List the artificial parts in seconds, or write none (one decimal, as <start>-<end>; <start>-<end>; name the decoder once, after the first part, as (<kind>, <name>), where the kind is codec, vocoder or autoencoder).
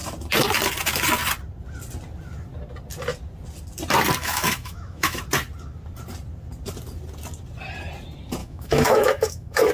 4.2-5.2 (autoencoder, DAC-VAE); 8.4-9.7